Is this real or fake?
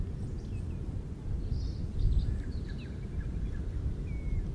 real